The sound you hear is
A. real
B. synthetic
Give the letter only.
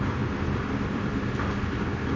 A